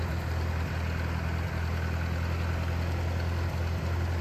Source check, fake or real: real